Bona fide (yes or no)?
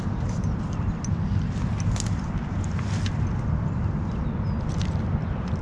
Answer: yes